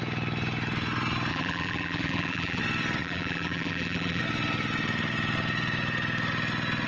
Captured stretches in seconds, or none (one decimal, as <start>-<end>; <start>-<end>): 0.0-1.3; 2.6-3.0; 4.2-6.9